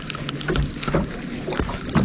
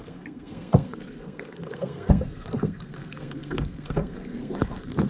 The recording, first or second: first